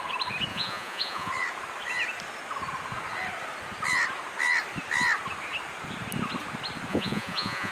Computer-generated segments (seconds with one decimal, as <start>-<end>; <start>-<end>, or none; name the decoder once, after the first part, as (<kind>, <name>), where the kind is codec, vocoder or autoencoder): 0.5-1.3 (vocoder, Vocos); 6.9-7.7

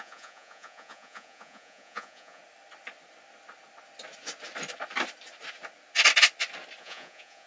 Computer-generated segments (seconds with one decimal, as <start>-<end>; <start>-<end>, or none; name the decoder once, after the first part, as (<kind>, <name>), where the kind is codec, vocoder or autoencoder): 0.0-2.4 (vocoder, Vocos); 6.8-7.5

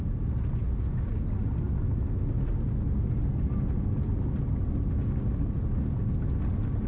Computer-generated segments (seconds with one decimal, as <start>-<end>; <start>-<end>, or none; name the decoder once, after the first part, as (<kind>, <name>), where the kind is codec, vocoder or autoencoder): none